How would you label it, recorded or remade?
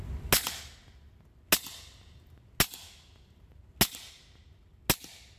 recorded